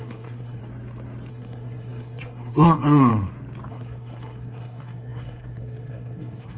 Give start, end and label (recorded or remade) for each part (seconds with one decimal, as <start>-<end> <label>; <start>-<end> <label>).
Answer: 0.0-0.6 remade; 0.6-1.3 recorded; 1.3-3.1 remade; 3.1-3.7 recorded; 3.7-6.6 remade